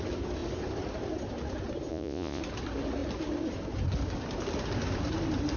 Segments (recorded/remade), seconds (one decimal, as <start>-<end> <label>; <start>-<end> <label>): 0.0-1.9 recorded; 1.9-2.4 remade; 2.4-5.6 recorded